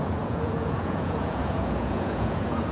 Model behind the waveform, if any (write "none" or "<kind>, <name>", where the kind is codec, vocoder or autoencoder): vocoder, Vocos